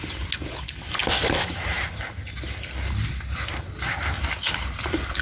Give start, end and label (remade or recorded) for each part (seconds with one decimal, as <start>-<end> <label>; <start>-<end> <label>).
0.0-5.2 recorded

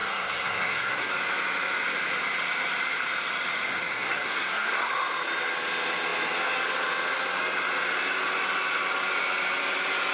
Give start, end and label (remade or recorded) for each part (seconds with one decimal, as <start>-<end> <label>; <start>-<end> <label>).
0.0-1.1 remade; 1.1-3.9 recorded; 3.9-4.9 remade; 4.9-10.1 recorded